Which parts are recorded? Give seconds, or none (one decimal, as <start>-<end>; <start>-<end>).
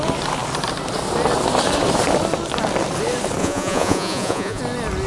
0.0-3.4; 4.6-5.1